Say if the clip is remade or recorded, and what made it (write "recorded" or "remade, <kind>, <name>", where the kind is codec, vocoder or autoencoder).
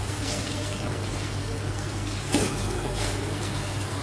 remade, codec, SNAC